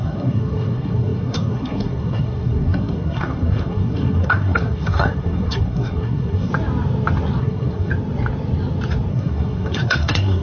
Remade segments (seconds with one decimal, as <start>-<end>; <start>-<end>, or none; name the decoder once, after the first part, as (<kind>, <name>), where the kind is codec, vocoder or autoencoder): 0.0-6.5 (codec, SNAC); 7.4-7.9; 9.1-10.4